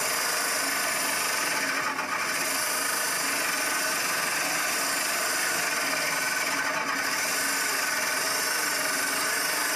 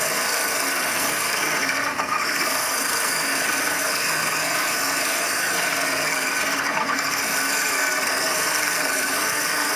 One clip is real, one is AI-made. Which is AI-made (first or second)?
second